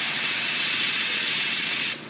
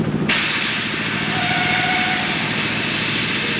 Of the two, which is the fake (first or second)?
first